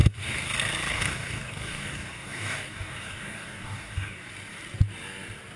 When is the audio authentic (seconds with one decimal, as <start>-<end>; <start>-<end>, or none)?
0.5-0.9; 4.3-5.6